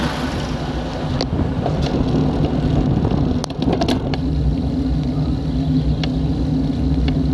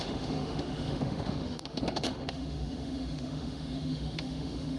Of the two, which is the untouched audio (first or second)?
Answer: first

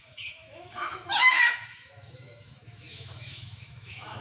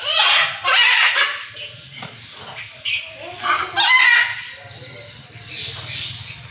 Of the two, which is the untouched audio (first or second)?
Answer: second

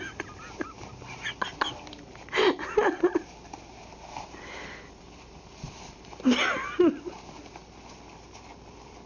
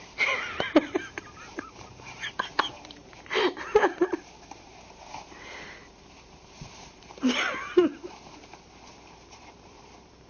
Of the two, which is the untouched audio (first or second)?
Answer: first